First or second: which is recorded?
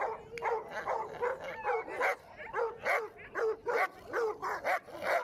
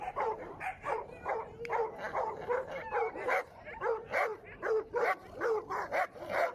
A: first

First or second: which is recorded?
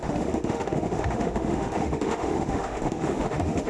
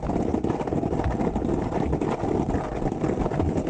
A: second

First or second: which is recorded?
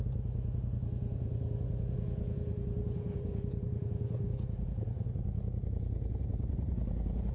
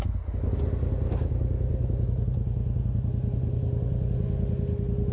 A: second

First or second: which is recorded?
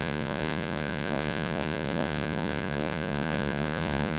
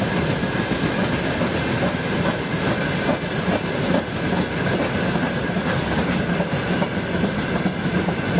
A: second